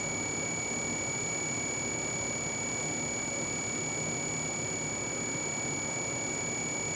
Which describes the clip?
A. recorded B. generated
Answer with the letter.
A